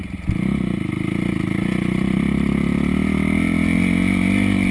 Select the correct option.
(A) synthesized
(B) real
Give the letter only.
B